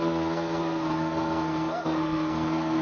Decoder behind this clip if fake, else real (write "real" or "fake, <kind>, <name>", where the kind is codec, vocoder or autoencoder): fake, codec, SNAC